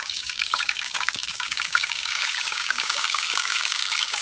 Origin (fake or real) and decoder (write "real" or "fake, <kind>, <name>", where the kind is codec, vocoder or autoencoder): fake, codec, DAC